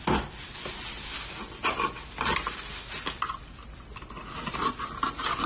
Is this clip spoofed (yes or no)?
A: no